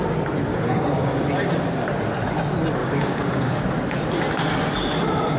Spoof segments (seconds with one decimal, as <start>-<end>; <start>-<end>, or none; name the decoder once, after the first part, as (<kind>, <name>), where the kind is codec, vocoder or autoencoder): 0.5-1.2 (codec, DAC); 2.8-3.5